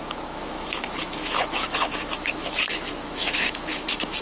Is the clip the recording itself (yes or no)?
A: no